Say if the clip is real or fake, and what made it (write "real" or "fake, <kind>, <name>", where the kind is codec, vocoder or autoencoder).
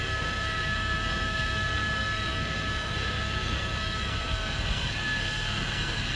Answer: fake, codec, SNAC